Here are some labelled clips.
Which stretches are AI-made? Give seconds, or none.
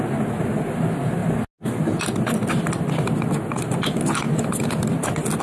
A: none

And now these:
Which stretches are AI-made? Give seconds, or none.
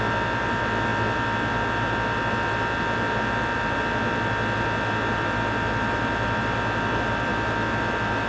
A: none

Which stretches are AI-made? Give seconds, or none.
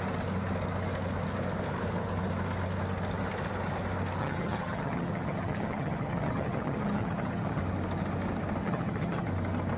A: 4.2-7.6 (vocoder, HiFi-GAN); 8.6-9.3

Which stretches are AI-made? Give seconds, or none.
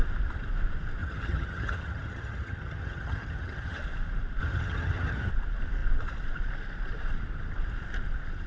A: 1.0-3.8 (vocoder, HiFi-GAN); 4.4-5.3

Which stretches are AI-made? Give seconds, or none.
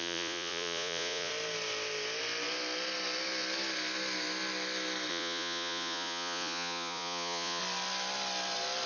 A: 0.0-1.3 (vocoder, Vocos); 5.1-7.6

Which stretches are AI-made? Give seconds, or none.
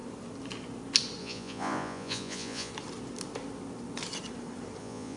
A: 1.2-2.7 (vocoder, Vocos); 4.8-5.2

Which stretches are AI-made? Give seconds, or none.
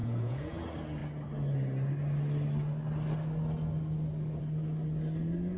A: 0.0-0.6 (vocoder, Vocos)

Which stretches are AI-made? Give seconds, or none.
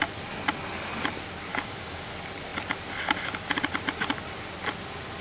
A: 1.5-2.1 (codec, DAC)